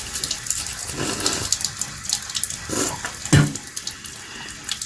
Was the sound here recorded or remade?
recorded